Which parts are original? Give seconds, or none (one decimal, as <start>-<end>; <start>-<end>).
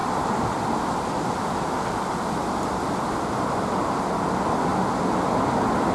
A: 0.0-5.9